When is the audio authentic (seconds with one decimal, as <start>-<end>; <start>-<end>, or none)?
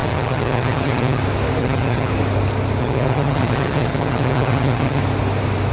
1.2-1.6; 2.1-2.8; 5.0-5.7